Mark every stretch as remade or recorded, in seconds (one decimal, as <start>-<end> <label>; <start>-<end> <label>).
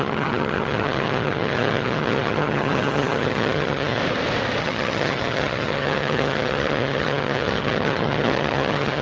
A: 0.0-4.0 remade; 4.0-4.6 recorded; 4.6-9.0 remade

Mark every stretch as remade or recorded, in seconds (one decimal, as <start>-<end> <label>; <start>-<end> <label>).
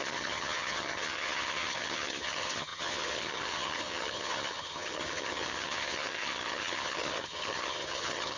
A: 0.0-8.4 remade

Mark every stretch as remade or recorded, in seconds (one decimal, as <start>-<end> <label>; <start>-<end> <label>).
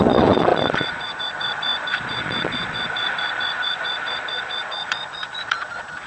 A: 0.0-6.1 remade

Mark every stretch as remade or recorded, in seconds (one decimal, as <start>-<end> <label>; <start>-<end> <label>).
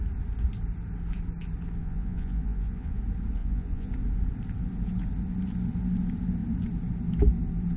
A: 0.0-1.8 recorded; 1.8-3.0 remade; 3.0-3.4 recorded; 3.4-3.9 remade; 3.9-7.8 recorded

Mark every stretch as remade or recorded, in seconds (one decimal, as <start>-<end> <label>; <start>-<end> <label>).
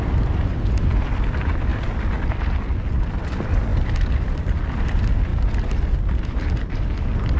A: 0.0-7.4 recorded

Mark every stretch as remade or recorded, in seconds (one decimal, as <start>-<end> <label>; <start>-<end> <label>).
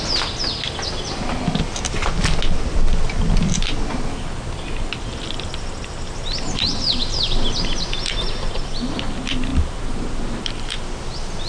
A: 0.0-11.5 recorded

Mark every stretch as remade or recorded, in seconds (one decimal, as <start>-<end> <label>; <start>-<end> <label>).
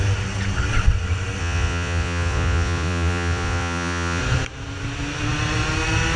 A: 0.0-1.4 recorded; 1.4-4.2 remade; 4.2-6.2 recorded